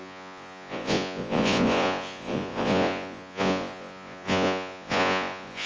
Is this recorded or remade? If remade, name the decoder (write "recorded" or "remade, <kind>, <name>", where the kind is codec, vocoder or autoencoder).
remade, vocoder, Vocos